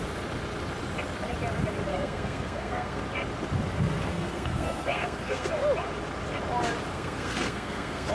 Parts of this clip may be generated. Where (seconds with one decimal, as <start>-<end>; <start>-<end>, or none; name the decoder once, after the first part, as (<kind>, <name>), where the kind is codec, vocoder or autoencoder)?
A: 1.9-3.0 (codec, SNAC); 4.1-5.5; 6.9-8.1